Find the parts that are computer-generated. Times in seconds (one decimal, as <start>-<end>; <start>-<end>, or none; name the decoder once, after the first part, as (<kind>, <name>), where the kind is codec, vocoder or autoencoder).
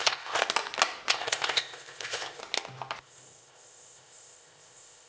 0.0-0.4 (codec, ZipCodec); 1.1-2.4; 3.0-5.1